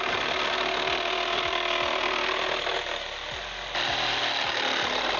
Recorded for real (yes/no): yes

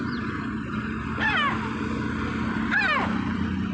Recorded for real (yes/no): yes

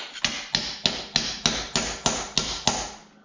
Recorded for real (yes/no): yes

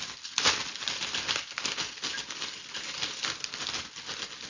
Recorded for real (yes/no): yes